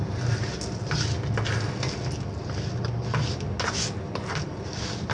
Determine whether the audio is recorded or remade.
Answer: recorded